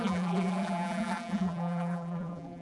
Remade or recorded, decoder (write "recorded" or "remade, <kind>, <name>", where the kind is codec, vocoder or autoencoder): remade, vocoder, BigVGAN v2